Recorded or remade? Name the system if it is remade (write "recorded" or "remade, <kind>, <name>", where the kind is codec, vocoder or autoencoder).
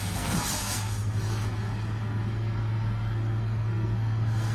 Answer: remade, codec, SNAC